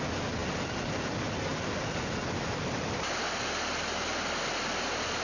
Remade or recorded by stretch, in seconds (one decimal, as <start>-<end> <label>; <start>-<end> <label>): 0.0-5.2 recorded

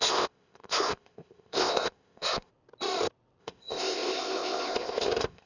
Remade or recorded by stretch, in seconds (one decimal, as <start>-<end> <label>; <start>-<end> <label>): 0.0-2.5 remade; 2.5-3.4 recorded; 3.4-5.5 remade

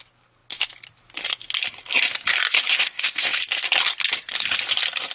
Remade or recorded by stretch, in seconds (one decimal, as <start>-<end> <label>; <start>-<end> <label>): 0.0-2.7 recorded; 2.7-3.4 remade; 3.4-5.1 recorded

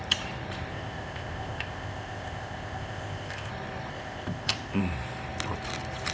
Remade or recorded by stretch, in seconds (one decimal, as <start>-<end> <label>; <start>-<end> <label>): 0.0-0.7 recorded; 0.7-3.5 remade; 3.5-3.9 recorded; 3.9-4.8 remade; 4.8-6.1 recorded